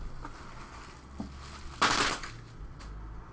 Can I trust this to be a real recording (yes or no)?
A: yes